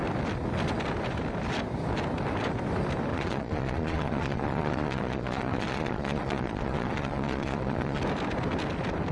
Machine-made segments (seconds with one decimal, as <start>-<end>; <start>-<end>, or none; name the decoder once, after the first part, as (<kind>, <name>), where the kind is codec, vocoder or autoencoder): 3.1-8.0 (vocoder, Vocos)